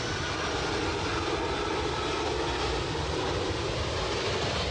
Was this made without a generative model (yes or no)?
yes